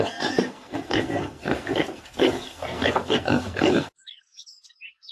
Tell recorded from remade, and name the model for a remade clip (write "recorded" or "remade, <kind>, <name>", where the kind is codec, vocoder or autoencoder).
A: remade, codec, SNAC